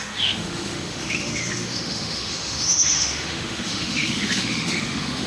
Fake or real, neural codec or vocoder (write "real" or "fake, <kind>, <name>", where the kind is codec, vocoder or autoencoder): fake, autoencoder, DAC-VAE